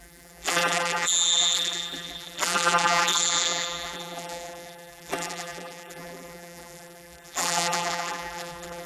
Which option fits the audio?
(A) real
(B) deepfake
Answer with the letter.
B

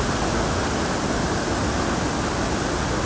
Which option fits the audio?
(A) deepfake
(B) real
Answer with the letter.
B